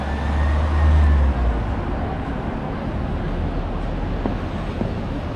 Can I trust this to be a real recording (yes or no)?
yes